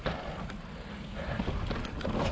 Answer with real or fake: real